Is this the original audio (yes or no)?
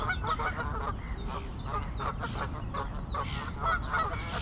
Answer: yes